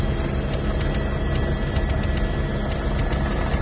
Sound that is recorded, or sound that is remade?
recorded